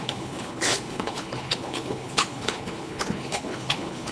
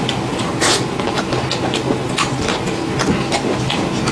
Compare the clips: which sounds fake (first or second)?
first